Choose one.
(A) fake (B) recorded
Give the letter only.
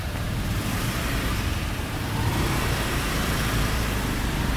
A